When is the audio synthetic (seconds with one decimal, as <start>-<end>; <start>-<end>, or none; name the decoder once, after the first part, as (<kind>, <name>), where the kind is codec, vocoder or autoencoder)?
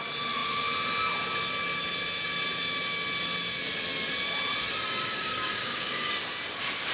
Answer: 5.0-6.1 (codec, DAC)